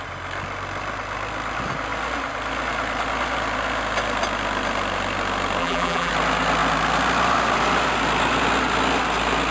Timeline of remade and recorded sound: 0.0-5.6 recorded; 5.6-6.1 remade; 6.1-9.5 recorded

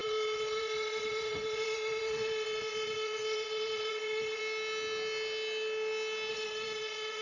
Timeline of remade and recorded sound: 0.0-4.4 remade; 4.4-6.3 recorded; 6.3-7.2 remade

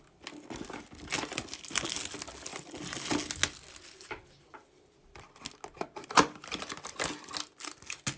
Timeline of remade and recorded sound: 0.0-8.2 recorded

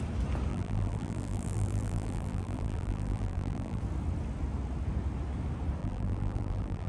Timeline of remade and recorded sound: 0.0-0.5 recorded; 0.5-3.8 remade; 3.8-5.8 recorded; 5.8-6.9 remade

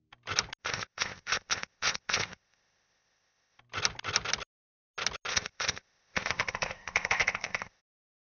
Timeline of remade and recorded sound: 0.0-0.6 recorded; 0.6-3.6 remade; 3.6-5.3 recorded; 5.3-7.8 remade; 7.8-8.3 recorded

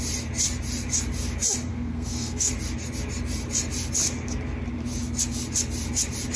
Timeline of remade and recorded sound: 0.0-1.7 recorded; 1.7-2.5 remade; 2.5-6.4 recorded

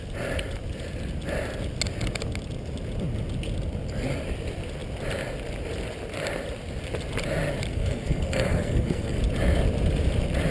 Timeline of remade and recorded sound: 0.0-7.7 recorded; 7.7-9.2 remade; 9.2-10.5 recorded